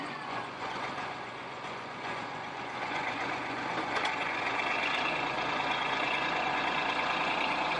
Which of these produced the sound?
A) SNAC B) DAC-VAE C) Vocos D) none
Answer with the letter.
C